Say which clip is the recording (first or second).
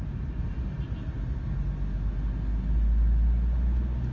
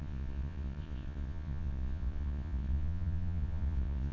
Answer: first